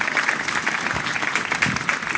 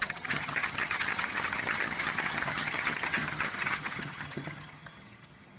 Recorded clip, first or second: first